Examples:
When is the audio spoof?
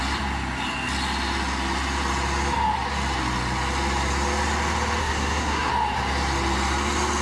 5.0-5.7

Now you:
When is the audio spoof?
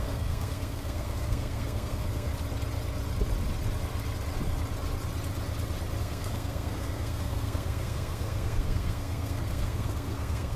0.0-2.3; 6.0-10.6